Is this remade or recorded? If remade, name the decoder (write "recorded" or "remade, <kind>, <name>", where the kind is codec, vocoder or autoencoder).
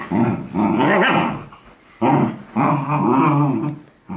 recorded